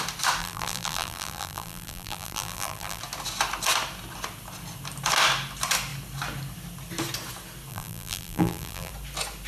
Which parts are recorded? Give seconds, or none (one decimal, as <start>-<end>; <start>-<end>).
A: 0.0-0.4; 3.0-7.7; 8.9-9.5